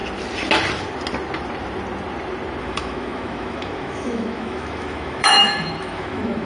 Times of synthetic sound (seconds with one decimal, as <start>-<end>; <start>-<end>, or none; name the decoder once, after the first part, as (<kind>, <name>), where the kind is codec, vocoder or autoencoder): 2.6-6.5 (autoencoder, DAC-VAE)